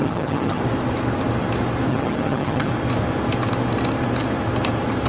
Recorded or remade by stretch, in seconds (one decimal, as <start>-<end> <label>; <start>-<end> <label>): 0.0-0.6 remade; 0.6-1.9 recorded; 1.9-2.7 remade; 2.7-5.1 recorded